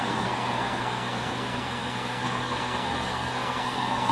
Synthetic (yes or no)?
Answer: yes